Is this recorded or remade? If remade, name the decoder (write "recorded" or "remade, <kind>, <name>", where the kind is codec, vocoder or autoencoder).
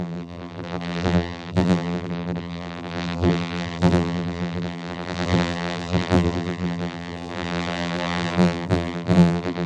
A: remade, vocoder, BigVGAN v2